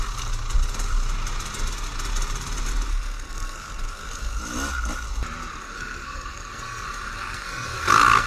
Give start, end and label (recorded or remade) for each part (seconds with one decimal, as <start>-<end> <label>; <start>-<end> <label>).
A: 0.0-2.9 recorded; 2.9-4.4 remade; 4.4-5.5 recorded; 5.5-8.3 remade